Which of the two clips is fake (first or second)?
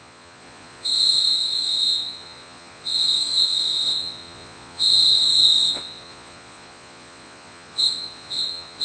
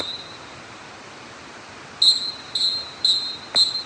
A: first